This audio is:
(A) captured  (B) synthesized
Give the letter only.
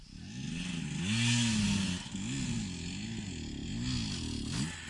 A